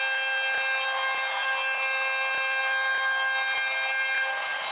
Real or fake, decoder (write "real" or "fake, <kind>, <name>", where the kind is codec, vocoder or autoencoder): real